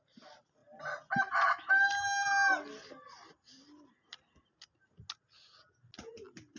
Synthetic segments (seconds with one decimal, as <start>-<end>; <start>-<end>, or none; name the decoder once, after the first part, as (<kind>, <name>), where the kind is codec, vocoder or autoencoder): none